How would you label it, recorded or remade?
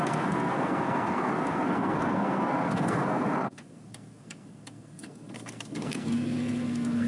remade